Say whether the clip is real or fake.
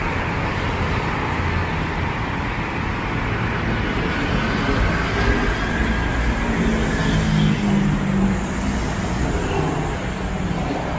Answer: real